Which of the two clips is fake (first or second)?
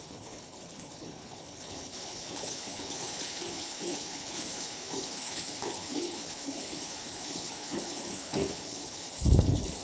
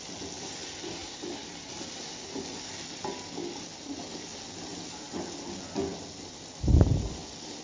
first